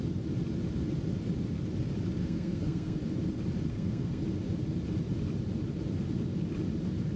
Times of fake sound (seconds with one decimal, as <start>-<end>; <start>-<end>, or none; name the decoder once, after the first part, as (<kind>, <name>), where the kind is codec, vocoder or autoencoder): 2.2-3.0 (codec, SNAC); 3.7-4.2